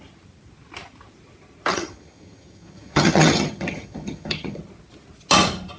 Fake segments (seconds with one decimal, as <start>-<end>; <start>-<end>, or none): 1.7-4.6